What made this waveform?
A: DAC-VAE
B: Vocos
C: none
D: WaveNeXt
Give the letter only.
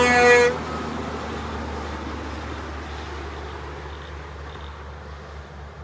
C